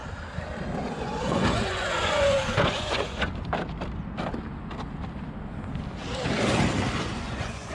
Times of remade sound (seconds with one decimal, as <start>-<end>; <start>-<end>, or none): 1.0-3.3; 7.1-7.7